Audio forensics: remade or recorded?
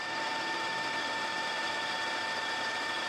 remade